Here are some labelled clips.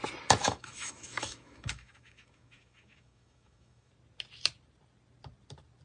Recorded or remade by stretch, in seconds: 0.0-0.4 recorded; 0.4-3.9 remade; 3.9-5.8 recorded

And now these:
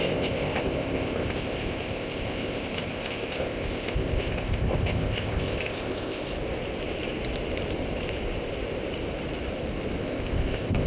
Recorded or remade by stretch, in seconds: 0.0-6.2 remade; 6.2-10.0 recorded; 10.0-10.9 remade